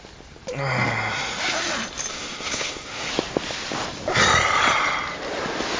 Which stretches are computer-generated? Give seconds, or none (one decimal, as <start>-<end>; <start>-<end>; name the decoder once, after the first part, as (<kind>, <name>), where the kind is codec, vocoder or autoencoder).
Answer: 2.1-3.1 (codec, SNAC)